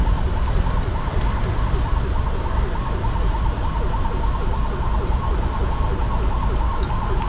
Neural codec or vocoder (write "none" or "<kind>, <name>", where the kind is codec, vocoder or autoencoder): none